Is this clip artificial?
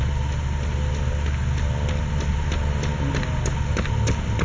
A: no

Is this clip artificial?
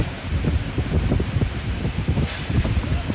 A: yes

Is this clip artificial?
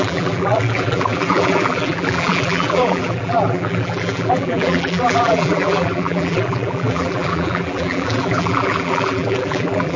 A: yes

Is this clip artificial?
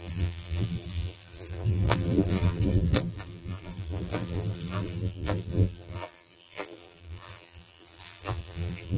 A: yes